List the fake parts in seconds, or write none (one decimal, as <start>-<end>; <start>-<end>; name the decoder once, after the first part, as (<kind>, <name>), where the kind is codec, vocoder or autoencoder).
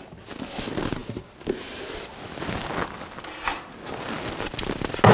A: none